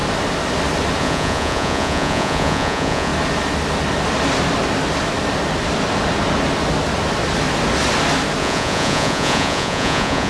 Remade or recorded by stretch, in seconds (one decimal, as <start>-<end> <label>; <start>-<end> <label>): 0.0-1.0 recorded; 1.0-3.1 remade; 3.1-8.4 recorded; 8.4-10.3 remade